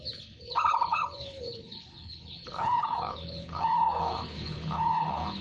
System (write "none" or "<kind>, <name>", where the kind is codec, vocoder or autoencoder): codec, HILCodec